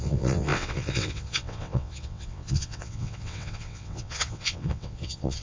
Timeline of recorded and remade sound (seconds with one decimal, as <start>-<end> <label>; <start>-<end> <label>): 0.0-5.4 remade